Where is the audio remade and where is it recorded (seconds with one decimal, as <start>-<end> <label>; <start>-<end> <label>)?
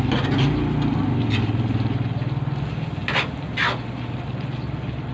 0.0-5.1 recorded